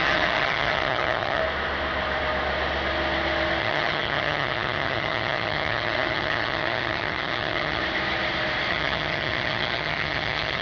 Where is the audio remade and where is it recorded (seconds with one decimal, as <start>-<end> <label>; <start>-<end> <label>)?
0.0-1.4 remade; 1.4-3.6 recorded; 3.6-7.8 remade; 7.8-8.7 recorded; 8.7-10.6 remade